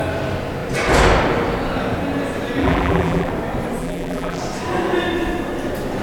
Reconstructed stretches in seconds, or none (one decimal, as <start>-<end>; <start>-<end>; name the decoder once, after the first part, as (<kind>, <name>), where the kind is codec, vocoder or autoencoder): 2.6-3.3 (vocoder, BigVGAN v2); 3.8-4.4